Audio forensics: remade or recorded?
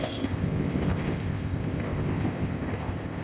remade